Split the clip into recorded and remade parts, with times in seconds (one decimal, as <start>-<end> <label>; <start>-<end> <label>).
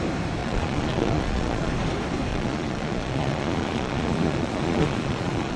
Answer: 0.0-0.4 recorded; 0.4-1.7 remade; 1.7-2.3 recorded; 2.3-5.6 remade